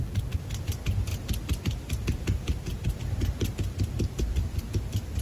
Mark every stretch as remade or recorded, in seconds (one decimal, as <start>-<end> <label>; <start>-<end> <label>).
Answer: 0.0-5.2 recorded

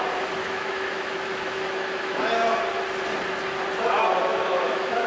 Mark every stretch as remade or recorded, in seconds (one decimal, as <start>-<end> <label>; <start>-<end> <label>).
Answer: 0.0-0.4 recorded; 0.4-2.2 remade; 2.2-4.3 recorded; 4.3-5.1 remade

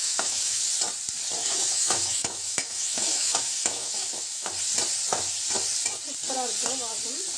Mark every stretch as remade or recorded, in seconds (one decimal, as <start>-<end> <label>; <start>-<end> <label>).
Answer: 0.0-0.6 remade; 0.6-1.4 recorded; 1.4-4.5 remade; 4.5-7.4 recorded

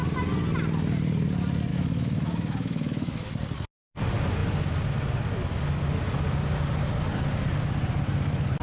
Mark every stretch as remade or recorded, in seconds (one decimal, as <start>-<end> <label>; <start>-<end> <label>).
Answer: 0.0-1.7 recorded; 1.7-3.3 remade; 3.3-8.6 recorded